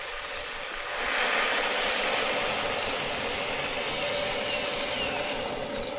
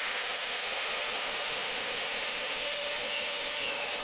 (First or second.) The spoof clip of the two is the second